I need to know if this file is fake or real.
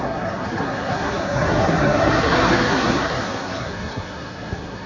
fake